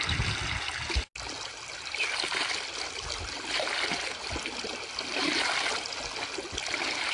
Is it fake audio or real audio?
real